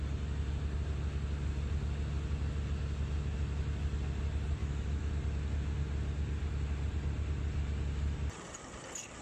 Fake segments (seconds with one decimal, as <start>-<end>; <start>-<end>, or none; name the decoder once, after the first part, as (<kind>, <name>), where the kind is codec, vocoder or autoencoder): 4.6-5.1 (autoencoder, DAC-VAE)